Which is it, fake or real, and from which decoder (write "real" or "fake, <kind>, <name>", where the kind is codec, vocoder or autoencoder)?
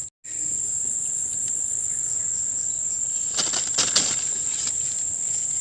real